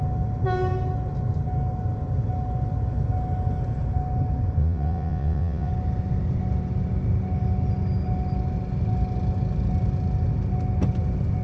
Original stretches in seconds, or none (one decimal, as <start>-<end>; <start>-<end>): 0.0-4.6; 5.7-11.4